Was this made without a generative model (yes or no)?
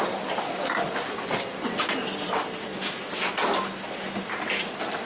yes